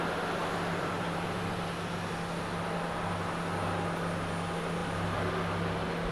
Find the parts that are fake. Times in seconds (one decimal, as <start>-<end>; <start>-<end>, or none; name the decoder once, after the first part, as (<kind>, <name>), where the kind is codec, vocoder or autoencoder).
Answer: 0.4-1.9 (vocoder, BigVGAN v2); 4.8-5.3